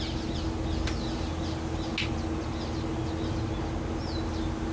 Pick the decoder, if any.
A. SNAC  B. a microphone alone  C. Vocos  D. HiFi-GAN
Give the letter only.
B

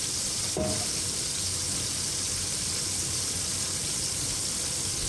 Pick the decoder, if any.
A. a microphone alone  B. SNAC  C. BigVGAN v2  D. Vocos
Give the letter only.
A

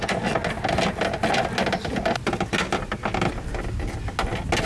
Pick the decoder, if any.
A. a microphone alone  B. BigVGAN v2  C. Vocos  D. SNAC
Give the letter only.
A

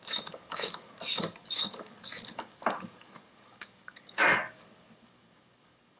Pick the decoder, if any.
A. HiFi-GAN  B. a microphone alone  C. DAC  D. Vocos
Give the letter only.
C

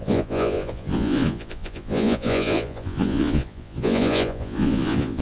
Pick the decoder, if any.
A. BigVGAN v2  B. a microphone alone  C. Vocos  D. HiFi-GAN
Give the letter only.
C